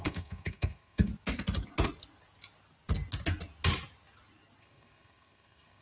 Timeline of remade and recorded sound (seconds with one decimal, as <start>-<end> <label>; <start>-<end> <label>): 0.0-1.1 remade; 1.1-4.6 recorded; 4.6-5.8 remade